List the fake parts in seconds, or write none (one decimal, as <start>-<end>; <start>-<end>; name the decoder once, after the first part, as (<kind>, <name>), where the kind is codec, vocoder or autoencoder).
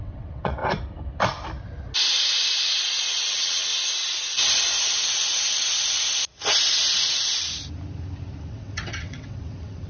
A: 0.0-0.6 (vocoder, WaveNeXt); 3.3-3.7; 8.5-9.9